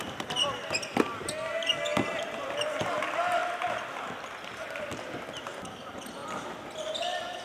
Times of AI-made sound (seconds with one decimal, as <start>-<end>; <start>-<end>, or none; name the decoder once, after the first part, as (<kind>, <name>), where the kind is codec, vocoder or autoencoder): none